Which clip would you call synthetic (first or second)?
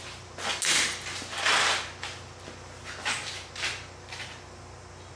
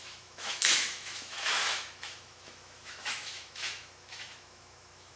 second